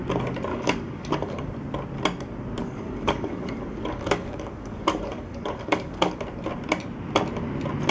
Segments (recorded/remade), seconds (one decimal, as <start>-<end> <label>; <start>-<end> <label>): 0.0-0.5 recorded; 0.5-1.5 remade; 1.5-2.6 recorded; 2.6-6.2 remade; 6.2-7.9 recorded